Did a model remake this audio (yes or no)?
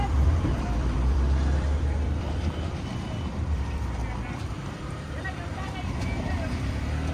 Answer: yes